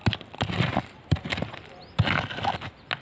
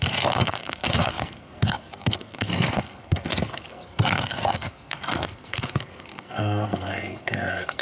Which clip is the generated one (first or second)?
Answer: second